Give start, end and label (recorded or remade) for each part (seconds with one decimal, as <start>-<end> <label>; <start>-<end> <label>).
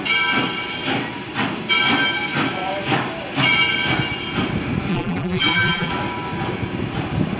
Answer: 0.0-4.9 recorded; 4.9-5.9 remade; 5.9-7.4 recorded